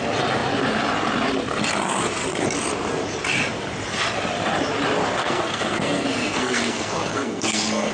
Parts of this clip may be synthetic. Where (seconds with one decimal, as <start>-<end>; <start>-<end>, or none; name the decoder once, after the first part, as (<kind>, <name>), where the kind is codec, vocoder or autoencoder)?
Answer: 5.2-7.9 (codec, SNAC)